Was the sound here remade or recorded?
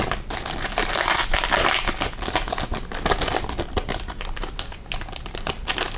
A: recorded